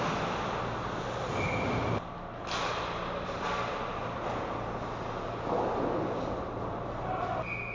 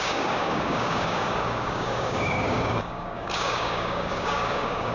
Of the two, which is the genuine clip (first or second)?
first